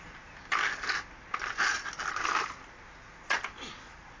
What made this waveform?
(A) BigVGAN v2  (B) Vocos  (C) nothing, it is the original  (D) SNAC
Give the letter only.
C